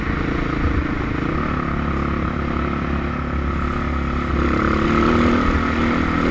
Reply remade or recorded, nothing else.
recorded